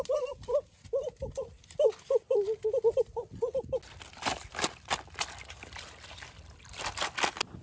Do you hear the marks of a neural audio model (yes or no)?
no